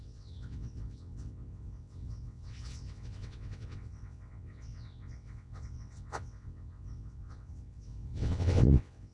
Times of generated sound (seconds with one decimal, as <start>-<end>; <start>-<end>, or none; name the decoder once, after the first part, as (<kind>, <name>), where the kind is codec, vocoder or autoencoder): 0.0-9.1 (vocoder, WaveNeXt)